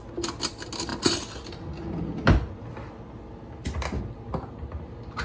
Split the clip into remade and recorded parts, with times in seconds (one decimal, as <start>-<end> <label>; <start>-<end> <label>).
0.0-5.2 recorded